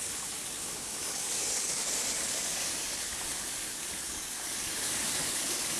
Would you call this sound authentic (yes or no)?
no